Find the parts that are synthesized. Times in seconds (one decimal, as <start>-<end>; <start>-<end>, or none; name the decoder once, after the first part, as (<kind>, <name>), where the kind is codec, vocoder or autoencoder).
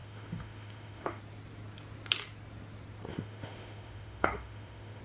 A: 0.0-1.2 (autoencoder, DAC-VAE); 3.1-5.0